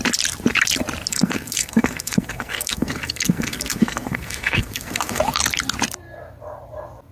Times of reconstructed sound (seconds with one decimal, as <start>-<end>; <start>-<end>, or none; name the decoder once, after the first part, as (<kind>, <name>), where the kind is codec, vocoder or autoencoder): 1.1-5.2 (codec, SNAC)